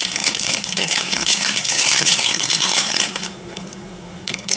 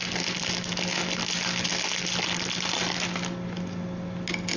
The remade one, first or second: first